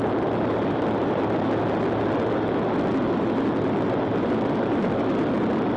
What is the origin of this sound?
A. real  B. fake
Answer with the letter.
A